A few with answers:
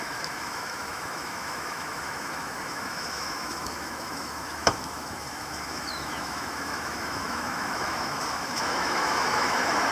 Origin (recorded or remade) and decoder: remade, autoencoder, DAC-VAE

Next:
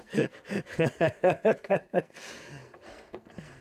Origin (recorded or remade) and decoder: remade, codec, SNAC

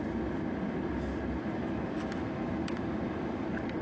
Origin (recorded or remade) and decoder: recorded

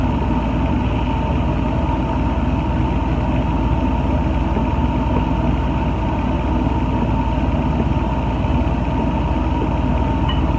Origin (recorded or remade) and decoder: recorded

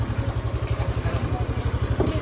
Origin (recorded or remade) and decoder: recorded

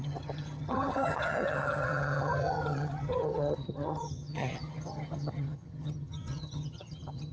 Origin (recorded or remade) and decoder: remade, vocoder, HiFi-GAN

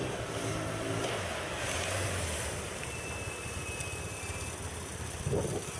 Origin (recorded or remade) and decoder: recorded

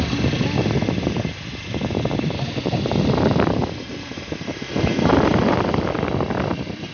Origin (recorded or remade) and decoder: recorded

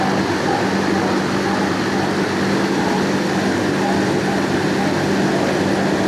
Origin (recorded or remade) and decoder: recorded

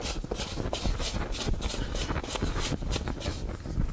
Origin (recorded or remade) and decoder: recorded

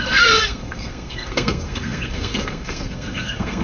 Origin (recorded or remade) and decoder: remade, codec, SNAC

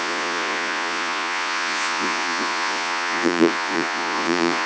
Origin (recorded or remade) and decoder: remade, vocoder, Vocos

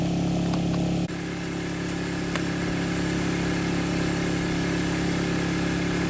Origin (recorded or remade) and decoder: recorded